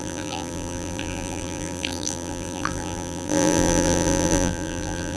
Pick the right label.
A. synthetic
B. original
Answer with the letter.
A